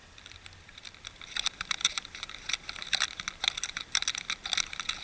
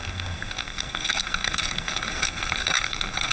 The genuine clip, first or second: first